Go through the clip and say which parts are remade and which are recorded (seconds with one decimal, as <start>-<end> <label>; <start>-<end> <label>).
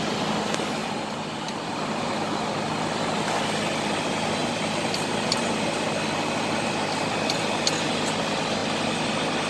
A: 0.0-0.8 recorded; 0.8-2.5 remade; 2.5-4.4 recorded; 4.4-5.3 remade; 5.3-9.5 recorded